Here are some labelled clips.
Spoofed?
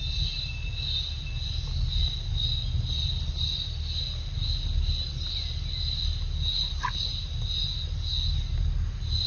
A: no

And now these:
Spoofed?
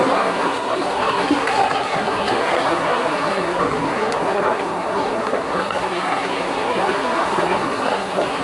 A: yes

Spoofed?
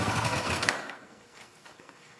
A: yes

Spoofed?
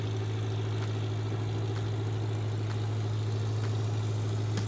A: no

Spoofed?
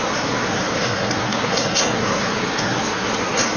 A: yes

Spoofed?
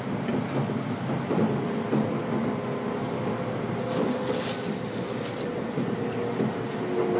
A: no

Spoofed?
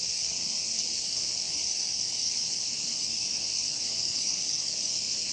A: yes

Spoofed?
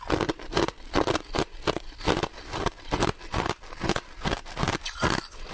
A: no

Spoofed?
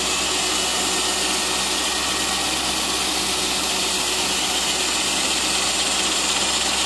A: no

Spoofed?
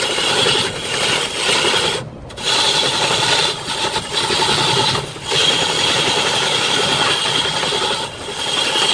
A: no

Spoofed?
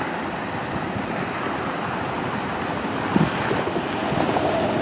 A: no